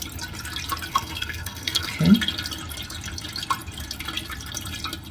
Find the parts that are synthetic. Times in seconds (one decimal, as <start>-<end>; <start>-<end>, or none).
0.9-1.9